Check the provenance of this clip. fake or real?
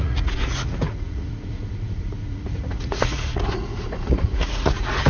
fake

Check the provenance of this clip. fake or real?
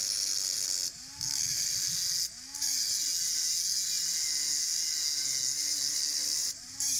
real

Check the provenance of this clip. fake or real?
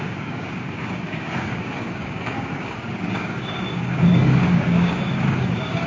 fake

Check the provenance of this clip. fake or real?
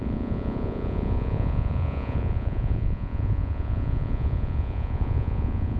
fake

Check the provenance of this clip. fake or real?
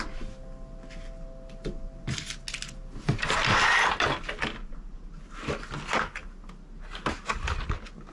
real